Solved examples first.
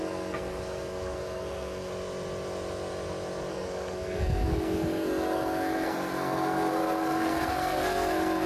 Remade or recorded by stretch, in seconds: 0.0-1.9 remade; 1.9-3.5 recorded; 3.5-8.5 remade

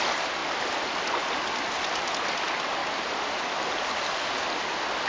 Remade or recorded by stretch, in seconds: 0.0-5.1 recorded

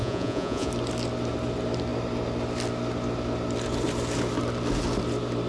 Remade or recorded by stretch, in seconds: 0.0-0.7 remade; 0.7-5.5 recorded

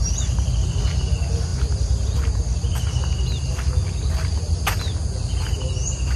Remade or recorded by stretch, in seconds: 0.0-6.2 recorded

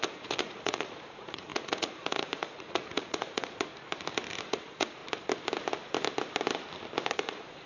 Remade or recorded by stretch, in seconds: 0.0-3.7 remade; 3.7-4.4 recorded; 4.4-5.0 remade; 5.0-7.1 recorded; 7.1-7.7 remade